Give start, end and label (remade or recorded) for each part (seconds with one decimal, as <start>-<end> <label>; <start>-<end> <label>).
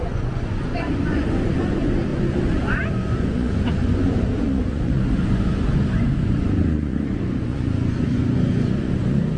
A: 0.0-9.4 remade